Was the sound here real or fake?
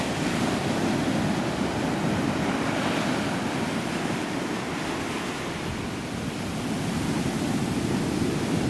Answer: real